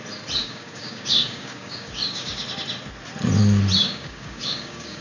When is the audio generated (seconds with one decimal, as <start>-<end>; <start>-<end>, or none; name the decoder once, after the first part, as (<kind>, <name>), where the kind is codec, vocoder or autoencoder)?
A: 0.4-2.4 (codec, DAC); 3.8-5.0